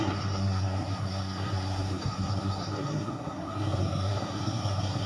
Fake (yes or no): yes